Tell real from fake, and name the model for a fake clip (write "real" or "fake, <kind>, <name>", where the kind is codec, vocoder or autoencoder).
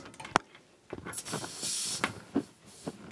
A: real